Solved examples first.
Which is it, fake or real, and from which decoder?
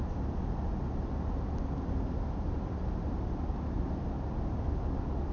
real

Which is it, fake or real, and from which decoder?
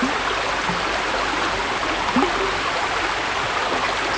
real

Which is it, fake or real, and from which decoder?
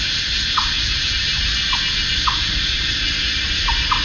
real